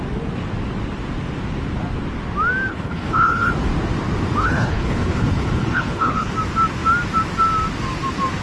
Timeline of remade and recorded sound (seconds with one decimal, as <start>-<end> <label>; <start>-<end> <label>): 0.0-2.7 recorded; 2.7-3.5 remade; 3.5-4.4 recorded; 4.4-6.3 remade; 6.3-8.4 recorded